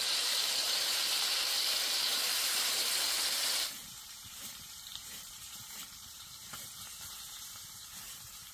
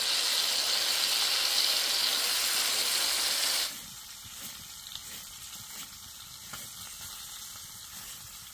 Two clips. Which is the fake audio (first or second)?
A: first